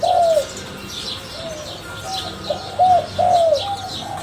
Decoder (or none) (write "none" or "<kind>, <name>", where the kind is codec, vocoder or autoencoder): none